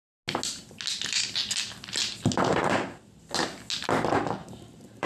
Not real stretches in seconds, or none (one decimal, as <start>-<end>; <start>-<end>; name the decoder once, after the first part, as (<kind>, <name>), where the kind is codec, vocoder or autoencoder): 2.5-3.3 (vocoder, BigVGAN v2); 4.4-5.1

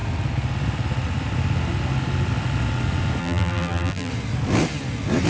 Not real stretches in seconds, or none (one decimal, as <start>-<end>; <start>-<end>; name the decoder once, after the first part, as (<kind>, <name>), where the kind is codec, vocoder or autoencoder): 3.2-4.1 (vocoder, BigVGAN v2)

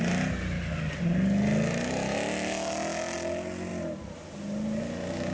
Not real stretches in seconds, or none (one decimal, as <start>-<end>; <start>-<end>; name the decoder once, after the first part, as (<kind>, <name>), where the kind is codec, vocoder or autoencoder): none

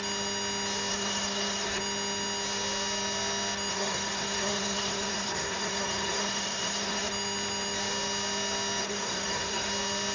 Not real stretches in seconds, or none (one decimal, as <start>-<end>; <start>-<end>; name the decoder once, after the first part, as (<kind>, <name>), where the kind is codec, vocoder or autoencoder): 0.9-1.8 (codec, SNAC); 3.7-7.1; 8.8-9.7

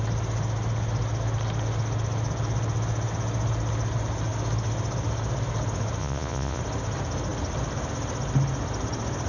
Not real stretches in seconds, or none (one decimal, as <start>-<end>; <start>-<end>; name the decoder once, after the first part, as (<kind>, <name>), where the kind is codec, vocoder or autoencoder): 6.0-6.6 (vocoder, Vocos)